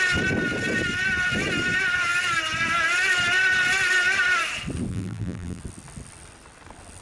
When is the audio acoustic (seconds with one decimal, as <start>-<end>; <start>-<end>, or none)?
0.0-4.9; 5.6-7.0